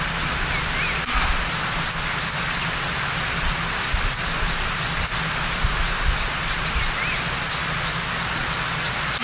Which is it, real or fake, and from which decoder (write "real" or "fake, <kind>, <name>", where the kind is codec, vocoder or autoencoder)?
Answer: real